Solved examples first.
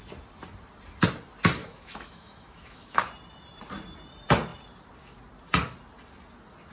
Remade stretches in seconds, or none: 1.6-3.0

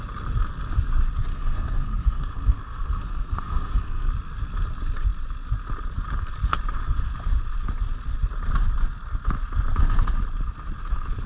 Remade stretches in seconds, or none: 1.3-4.1

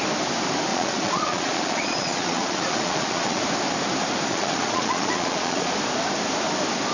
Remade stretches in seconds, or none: 0.7-3.4; 4.3-5.7

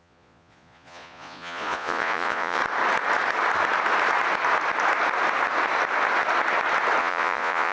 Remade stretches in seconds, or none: 0.0-2.6; 7.0-7.7

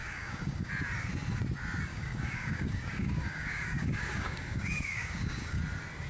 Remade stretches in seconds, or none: 0.0-0.7; 1.9-5.6

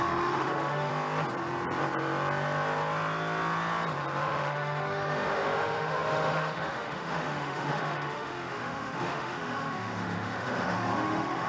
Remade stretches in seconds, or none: 0.0-0.9; 4.2-11.5

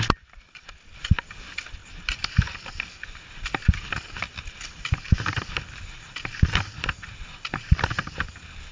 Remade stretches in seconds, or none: 1.8-2.4

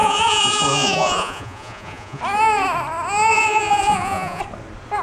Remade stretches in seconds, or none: 0.0-2.2; 3.3-4.4